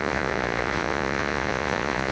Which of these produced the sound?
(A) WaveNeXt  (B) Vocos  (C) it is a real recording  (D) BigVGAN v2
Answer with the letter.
B